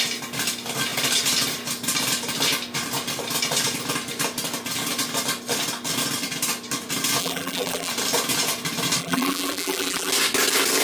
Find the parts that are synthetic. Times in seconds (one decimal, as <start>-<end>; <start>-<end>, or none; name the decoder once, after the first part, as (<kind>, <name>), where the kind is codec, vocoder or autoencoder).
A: 7.2-7.9 (vocoder, BigVGAN v2); 9.0-10.1